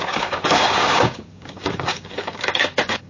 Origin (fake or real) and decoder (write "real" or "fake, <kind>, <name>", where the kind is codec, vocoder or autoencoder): fake, codec, DAC